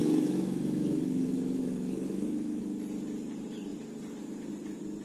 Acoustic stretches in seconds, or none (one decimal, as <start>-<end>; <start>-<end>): 2.6-5.0